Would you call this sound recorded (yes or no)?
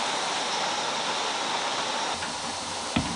yes